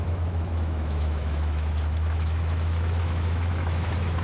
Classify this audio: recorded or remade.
remade